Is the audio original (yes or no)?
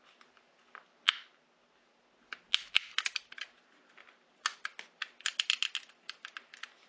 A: yes